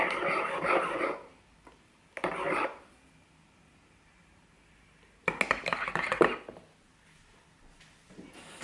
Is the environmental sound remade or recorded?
recorded